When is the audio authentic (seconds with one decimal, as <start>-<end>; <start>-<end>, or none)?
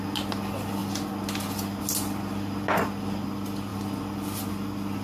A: 0.0-5.0